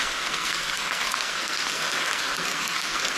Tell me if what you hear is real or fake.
fake